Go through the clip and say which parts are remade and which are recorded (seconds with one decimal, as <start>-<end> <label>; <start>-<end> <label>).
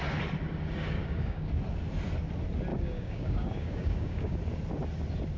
0.0-1.0 recorded; 1.0-1.5 remade; 1.5-2.7 recorded; 2.7-4.4 remade; 4.4-5.4 recorded